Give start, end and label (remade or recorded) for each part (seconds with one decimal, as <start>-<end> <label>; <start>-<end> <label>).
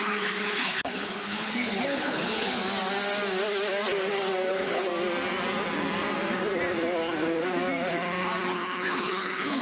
0.0-2.6 remade; 2.6-4.5 recorded; 4.5-4.9 remade; 4.9-8.5 recorded; 8.5-9.6 remade